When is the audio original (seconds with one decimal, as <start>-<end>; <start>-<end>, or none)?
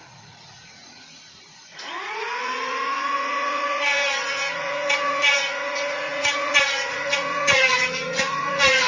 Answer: none